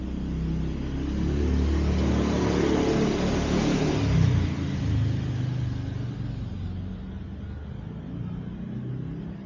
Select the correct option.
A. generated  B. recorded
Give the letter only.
B